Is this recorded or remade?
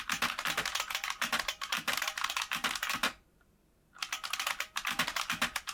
recorded